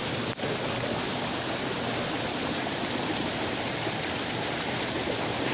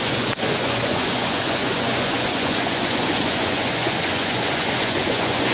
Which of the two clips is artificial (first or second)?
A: second